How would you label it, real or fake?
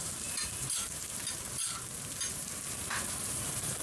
fake